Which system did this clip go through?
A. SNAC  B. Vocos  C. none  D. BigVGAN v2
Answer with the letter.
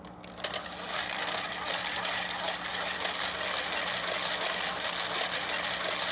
C